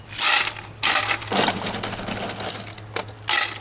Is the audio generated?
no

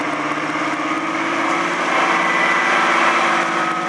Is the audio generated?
yes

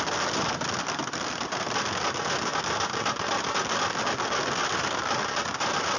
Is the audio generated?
no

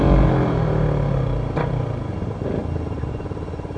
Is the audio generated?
no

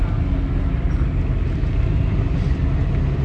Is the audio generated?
no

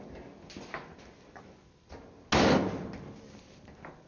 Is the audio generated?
no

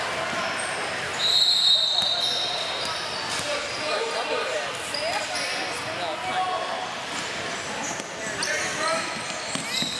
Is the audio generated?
no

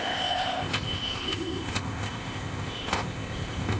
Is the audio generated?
yes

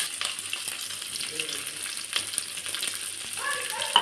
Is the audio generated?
no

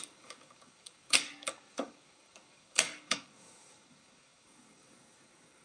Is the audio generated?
yes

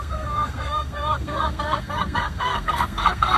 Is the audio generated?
yes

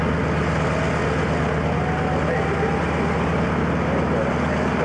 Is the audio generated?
no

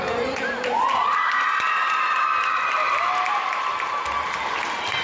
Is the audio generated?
no